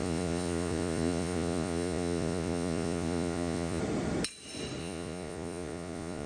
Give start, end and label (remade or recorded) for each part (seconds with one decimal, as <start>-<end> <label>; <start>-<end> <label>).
0.0-3.8 remade; 3.8-4.8 recorded; 4.8-6.3 remade